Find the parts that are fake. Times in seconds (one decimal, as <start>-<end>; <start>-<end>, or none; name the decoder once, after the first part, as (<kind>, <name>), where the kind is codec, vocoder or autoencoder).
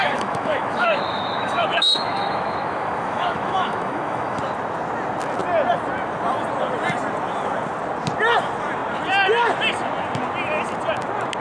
0.0-4.4 (autoencoder, DAC-VAE)